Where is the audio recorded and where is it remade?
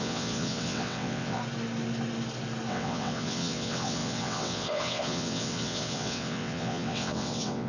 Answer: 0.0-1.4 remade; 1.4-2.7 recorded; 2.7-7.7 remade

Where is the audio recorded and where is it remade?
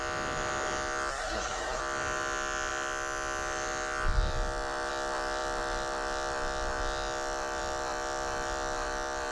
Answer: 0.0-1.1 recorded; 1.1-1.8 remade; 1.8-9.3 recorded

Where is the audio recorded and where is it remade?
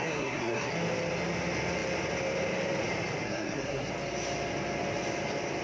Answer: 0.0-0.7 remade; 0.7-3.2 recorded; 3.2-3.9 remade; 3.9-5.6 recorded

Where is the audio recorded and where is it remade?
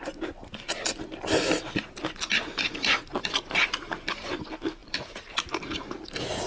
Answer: 0.0-4.8 recorded; 4.8-6.5 remade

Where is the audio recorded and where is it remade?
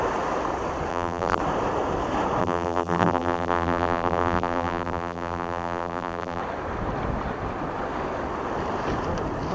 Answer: 0.0-0.9 recorded; 0.9-1.4 remade; 1.4-2.4 recorded; 2.4-6.4 remade; 6.4-9.5 recorded